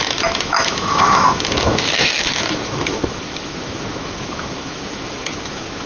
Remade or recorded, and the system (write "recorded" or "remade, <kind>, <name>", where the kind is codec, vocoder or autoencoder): remade, autoencoder, DAC-VAE